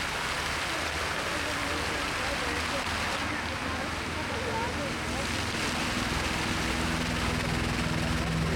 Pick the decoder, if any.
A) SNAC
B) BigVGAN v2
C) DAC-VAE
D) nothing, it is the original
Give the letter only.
D